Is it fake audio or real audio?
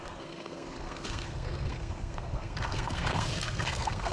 fake